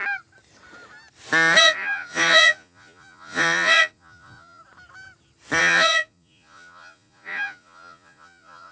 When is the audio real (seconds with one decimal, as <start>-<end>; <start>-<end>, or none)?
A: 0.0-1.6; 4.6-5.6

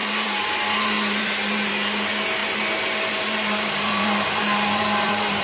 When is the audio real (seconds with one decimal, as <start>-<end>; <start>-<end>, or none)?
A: 1.7-2.4

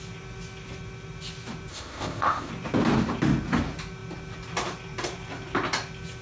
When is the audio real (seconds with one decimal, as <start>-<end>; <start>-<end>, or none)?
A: 0.0-1.7; 2.5-6.2

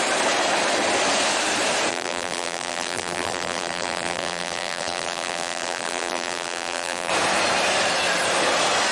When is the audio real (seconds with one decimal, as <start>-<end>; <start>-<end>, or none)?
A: 0.0-1.9; 7.1-8.9